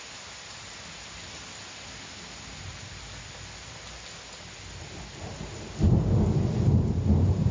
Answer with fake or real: real